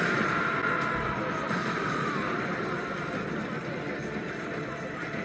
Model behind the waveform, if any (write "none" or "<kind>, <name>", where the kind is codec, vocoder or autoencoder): none